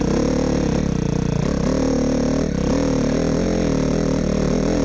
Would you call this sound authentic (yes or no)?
yes